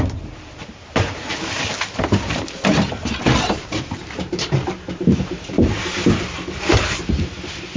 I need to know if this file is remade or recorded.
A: remade